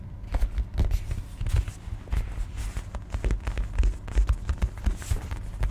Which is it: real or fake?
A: real